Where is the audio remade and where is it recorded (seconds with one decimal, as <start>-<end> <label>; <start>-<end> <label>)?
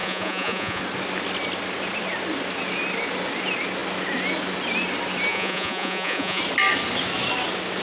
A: 0.0-0.8 remade; 0.8-5.3 recorded; 5.3-6.4 remade; 6.4-7.8 recorded